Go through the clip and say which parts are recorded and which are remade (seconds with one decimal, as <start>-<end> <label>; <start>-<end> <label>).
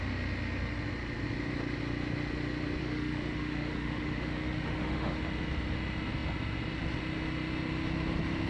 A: 0.0-2.8 recorded; 2.8-5.2 remade; 5.2-8.5 recorded